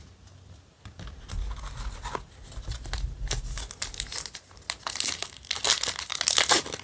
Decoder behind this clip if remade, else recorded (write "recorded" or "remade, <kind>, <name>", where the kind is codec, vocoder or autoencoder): recorded